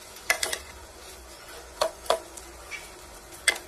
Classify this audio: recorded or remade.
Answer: remade